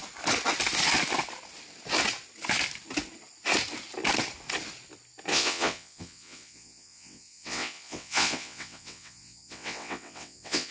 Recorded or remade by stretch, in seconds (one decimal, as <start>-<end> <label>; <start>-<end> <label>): 0.0-5.3 recorded; 5.3-10.7 remade